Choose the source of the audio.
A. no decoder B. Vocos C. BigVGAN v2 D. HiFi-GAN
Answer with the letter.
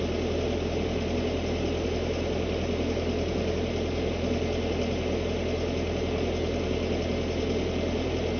A